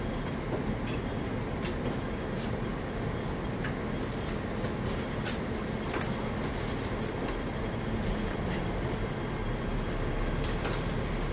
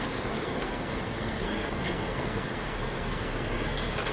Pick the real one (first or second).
first